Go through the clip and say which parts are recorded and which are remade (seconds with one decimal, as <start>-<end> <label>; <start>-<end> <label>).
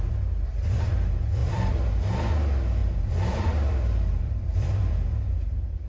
0.0-1.4 recorded; 1.4-1.9 remade; 1.9-2.8 recorded; 2.8-4.9 remade; 4.9-5.9 recorded